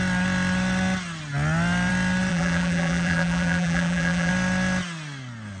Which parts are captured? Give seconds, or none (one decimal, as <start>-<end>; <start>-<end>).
0.0-2.3; 4.3-5.6